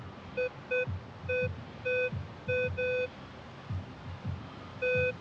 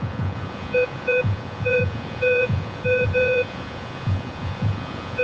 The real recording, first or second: first